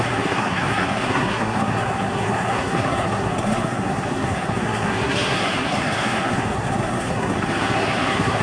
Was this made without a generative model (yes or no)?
no